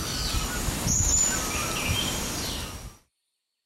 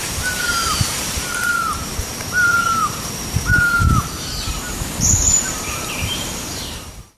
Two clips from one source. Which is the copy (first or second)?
second